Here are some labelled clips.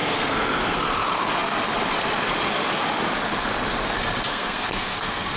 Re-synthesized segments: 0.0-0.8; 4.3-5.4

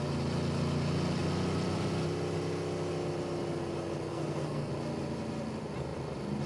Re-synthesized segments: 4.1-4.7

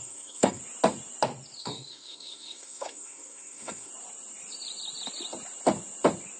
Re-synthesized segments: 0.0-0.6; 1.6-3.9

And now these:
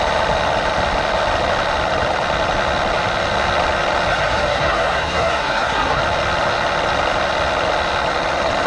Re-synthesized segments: 4.1-6.0

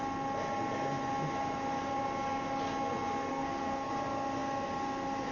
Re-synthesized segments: 3.3-3.9